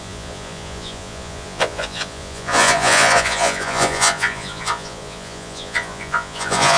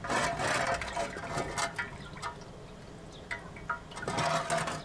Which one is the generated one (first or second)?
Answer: first